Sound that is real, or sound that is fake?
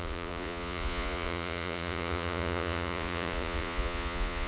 fake